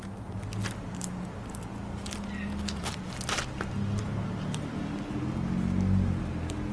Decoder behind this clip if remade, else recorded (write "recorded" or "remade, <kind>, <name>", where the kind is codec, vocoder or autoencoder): recorded